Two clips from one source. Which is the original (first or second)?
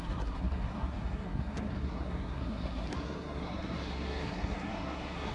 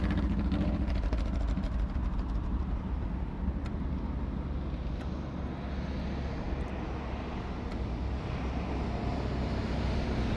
second